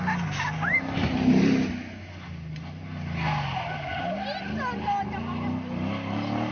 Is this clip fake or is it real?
real